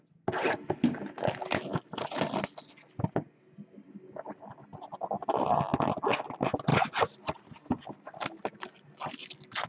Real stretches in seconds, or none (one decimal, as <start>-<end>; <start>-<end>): 0.0-9.7